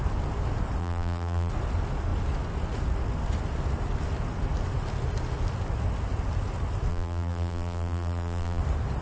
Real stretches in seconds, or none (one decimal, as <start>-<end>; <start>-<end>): 0.0-0.8; 1.5-6.9; 8.6-9.0